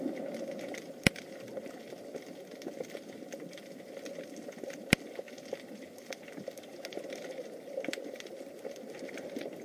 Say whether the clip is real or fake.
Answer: real